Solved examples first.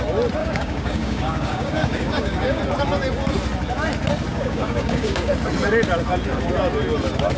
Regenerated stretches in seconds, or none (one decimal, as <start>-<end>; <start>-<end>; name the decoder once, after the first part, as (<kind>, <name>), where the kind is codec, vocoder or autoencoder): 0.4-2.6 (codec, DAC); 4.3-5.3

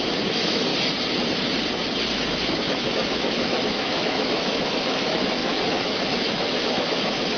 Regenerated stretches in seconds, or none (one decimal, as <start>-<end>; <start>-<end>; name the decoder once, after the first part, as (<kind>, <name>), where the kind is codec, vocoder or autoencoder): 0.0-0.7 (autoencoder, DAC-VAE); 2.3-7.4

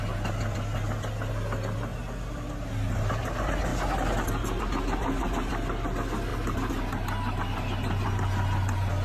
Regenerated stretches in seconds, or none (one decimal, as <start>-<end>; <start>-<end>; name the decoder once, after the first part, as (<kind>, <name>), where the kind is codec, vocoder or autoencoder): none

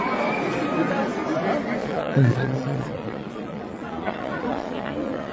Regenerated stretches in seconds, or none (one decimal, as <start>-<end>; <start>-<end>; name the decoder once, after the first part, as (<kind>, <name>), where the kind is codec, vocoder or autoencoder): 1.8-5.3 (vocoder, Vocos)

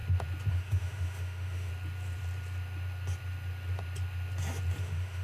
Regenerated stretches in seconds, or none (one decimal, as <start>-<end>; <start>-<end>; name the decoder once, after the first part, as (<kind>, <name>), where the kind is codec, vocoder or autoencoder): 0.5-1.7 (autoencoder, DAC-VAE); 4.8-5.2

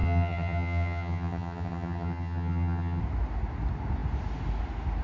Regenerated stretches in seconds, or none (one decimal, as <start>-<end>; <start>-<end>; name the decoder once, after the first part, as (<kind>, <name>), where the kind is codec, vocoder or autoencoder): 0.0-3.0 (vocoder, HiFi-GAN)

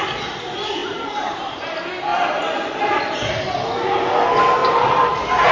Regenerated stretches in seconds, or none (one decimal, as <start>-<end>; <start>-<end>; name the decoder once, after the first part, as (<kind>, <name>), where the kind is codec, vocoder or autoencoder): 0.8-1.6 (vocoder, BigVGAN v2); 4.6-5.1

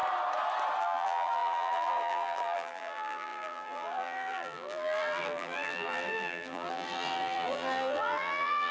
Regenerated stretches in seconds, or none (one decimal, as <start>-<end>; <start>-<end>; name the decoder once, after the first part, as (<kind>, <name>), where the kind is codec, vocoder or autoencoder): 0.8-8.7 (vocoder, BigVGAN v2)